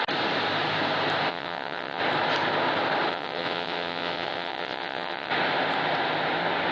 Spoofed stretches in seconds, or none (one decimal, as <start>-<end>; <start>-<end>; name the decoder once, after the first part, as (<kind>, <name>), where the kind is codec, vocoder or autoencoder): 1.3-2.0 (vocoder, WaveNeXt); 3.1-5.3